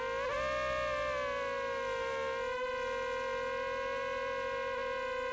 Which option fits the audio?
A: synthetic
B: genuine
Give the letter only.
B